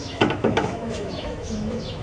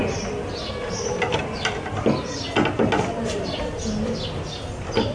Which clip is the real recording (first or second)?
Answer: second